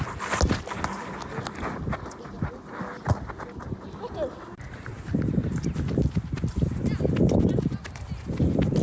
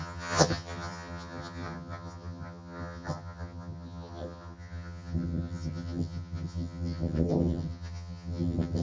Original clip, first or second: first